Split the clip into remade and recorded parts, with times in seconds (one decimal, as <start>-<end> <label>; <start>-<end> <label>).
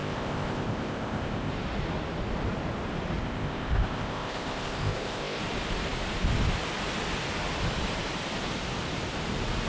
0.0-1.5 remade; 1.5-3.2 recorded; 3.2-5.4 remade; 5.4-9.7 recorded